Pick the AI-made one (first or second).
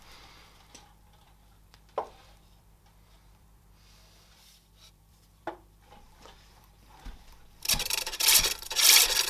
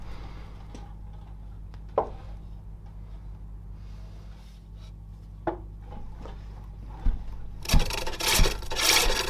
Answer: first